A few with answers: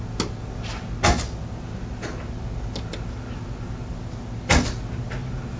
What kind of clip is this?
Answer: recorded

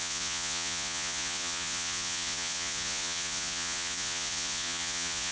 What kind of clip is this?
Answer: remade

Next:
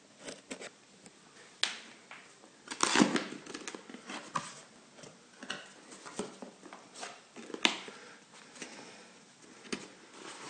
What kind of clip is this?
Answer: recorded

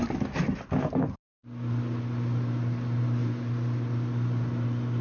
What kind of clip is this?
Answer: recorded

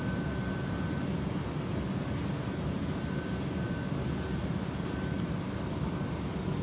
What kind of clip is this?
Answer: recorded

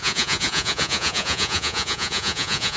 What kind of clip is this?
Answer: remade